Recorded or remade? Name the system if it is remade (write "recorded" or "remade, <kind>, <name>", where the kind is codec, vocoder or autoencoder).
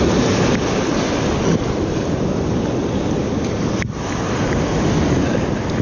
recorded